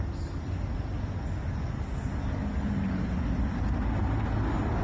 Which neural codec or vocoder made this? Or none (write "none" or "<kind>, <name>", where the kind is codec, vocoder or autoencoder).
none